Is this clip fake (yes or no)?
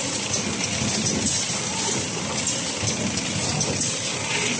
no